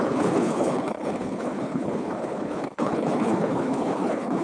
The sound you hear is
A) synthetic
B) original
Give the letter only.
A